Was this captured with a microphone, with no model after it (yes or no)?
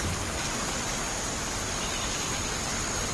yes